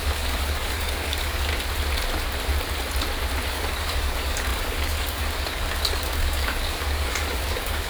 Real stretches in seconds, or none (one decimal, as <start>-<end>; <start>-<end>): 1.5-3.5